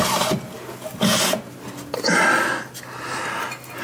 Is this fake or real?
real